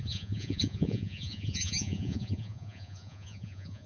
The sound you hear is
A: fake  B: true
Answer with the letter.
A